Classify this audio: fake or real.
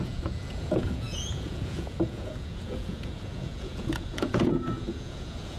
fake